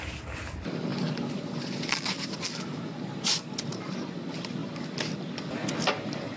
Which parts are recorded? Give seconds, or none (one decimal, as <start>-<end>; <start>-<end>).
0.0-6.4